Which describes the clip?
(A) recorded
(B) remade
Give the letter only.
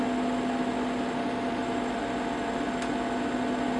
A